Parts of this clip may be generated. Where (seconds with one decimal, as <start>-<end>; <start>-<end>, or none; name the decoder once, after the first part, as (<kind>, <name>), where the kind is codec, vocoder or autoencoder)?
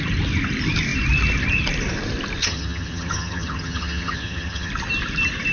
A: 2.4-4.7 (vocoder, HiFi-GAN)